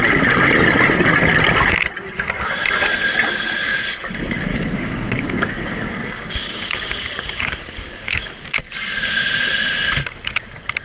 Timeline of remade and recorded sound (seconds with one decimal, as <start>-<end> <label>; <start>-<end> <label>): 0.0-4.5 recorded; 4.5-8.6 remade; 8.6-10.8 recorded